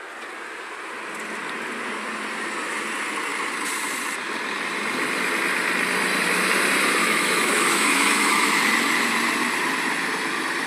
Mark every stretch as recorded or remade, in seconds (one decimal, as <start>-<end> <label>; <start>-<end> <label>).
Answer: 0.0-7.0 recorded; 7.0-8.6 remade; 8.6-10.7 recorded